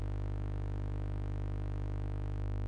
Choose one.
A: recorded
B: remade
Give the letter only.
A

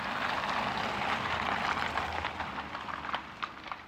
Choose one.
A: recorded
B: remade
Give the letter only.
A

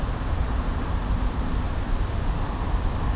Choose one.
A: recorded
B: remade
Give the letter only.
B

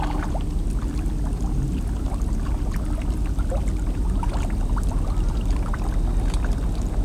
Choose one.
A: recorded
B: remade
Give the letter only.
A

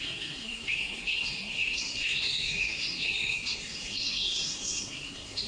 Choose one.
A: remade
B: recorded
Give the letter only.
A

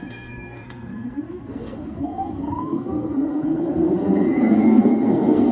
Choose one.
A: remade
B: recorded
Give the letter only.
A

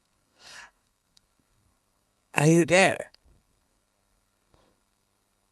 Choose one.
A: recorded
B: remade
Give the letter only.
B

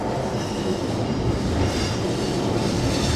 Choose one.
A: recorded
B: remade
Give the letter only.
A